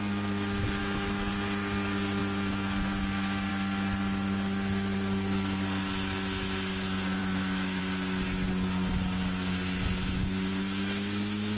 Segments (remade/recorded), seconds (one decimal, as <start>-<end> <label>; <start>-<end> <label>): 0.0-0.8 recorded; 0.8-1.3 remade; 1.3-7.2 recorded; 7.2-7.8 remade; 7.8-11.6 recorded